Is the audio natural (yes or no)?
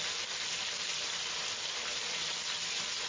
yes